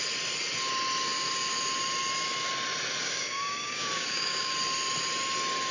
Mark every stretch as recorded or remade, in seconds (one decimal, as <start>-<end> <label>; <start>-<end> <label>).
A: 0.0-3.0 recorded; 3.0-4.5 remade; 4.5-5.7 recorded